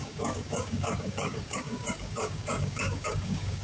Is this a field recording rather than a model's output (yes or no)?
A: no